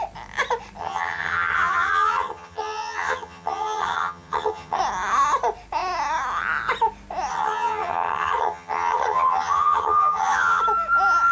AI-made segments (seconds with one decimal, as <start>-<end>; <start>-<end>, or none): 0.8-4.8; 7.3-10.6